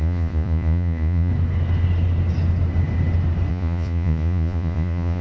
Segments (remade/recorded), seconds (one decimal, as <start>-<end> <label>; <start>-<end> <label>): 0.0-1.3 remade; 1.3-3.5 recorded; 3.5-5.2 remade